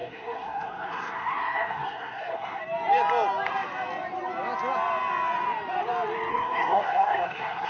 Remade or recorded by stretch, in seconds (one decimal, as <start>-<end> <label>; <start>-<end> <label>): 0.0-2.6 remade; 2.6-6.3 recorded; 6.3-7.7 remade